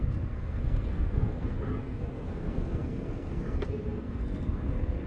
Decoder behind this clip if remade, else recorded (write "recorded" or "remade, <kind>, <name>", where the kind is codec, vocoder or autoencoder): remade, codec, SNAC